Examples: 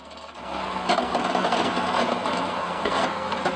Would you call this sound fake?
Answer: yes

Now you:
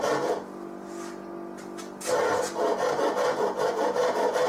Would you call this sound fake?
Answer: no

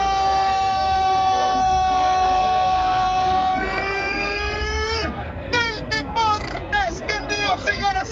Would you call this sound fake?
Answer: yes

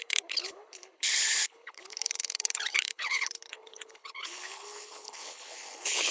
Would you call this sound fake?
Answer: yes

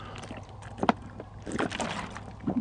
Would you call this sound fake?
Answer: no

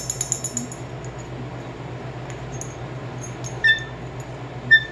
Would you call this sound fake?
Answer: no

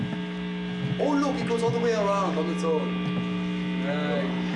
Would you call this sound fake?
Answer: no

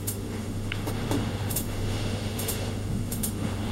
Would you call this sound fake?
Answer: yes